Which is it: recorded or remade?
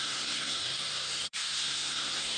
remade